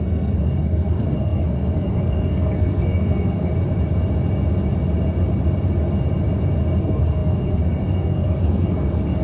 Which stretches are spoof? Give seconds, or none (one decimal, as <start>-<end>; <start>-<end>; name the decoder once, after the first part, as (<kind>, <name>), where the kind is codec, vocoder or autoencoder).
0.0-3.5 (codec, SNAC); 6.8-9.2